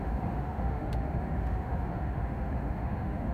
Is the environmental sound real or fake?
fake